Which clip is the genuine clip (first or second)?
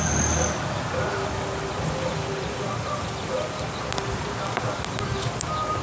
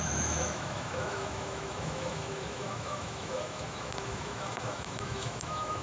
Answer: first